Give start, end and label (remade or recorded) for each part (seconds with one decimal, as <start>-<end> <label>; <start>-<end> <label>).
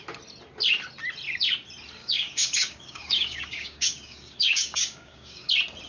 0.0-2.0 recorded; 2.0-5.5 remade; 5.5-5.9 recorded